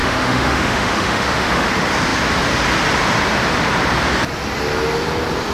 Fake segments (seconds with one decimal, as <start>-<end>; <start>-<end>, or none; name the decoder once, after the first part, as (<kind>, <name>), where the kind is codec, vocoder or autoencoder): 0.0-1.7 (autoencoder, DAC-VAE)